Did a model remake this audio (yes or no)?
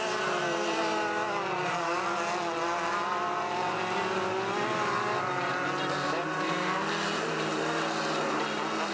no